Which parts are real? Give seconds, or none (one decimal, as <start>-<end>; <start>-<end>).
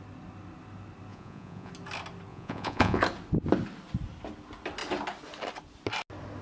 0.0-1.1; 1.7-2.3; 3.0-6.4